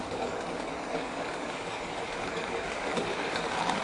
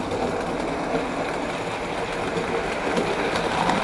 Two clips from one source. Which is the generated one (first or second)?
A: first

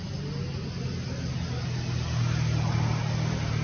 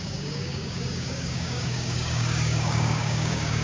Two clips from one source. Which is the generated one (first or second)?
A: second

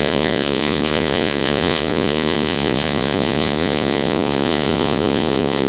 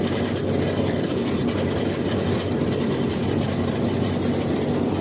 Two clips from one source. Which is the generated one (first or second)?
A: first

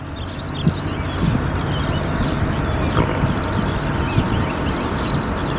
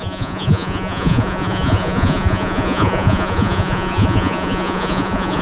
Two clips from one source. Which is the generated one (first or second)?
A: second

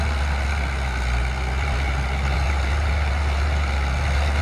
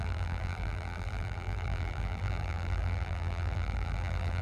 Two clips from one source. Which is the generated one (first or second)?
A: second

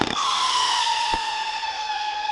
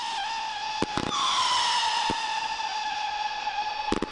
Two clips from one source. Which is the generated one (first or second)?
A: first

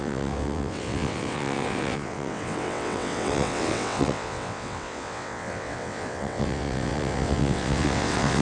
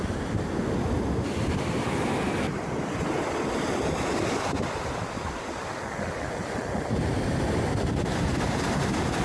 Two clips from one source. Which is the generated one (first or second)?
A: first